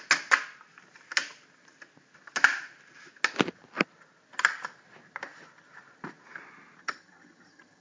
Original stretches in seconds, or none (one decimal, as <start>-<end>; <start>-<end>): 0.0-6.8